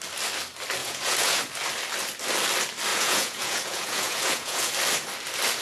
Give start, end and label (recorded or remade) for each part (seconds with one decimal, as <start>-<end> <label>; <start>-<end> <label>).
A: 0.0-0.8 recorded; 0.8-1.4 remade; 1.4-2.9 recorded; 2.9-4.7 remade; 4.7-5.6 recorded